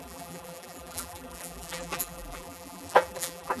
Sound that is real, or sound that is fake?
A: fake